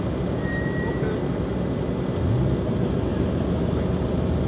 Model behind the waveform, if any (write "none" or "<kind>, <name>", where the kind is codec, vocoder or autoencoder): none